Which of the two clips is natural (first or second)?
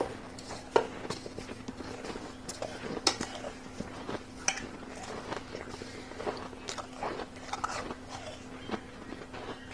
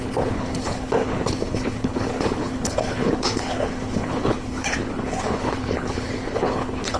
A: first